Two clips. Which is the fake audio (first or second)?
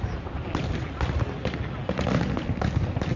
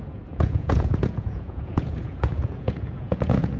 second